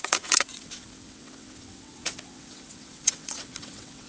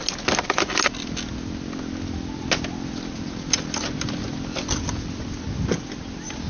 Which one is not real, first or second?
first